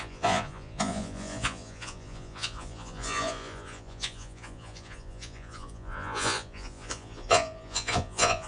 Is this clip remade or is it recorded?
remade